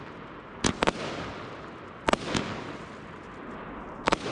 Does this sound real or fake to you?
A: real